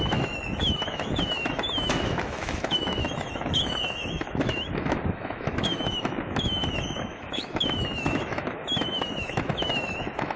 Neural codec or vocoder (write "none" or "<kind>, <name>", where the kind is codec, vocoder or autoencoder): autoencoder, DAC-VAE